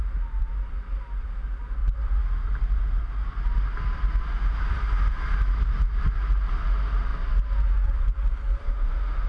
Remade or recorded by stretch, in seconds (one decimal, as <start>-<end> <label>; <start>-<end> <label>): 0.0-8.6 recorded; 8.6-9.3 remade